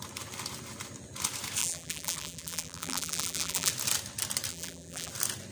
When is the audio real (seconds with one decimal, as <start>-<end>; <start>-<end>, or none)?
0.0-1.6; 3.7-4.5; 5.1-5.5